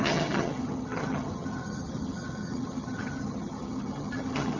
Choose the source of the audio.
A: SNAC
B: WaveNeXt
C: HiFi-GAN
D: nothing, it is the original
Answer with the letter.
C